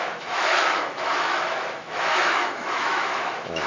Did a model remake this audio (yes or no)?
yes